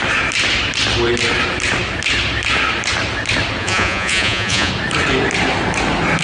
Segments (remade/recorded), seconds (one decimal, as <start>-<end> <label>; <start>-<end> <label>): 0.0-3.6 recorded; 3.6-4.7 remade; 4.7-6.2 recorded